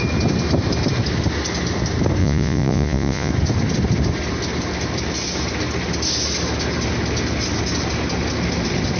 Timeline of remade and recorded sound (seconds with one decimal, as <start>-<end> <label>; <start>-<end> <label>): 0.0-2.2 recorded; 2.2-3.3 remade; 3.3-9.0 recorded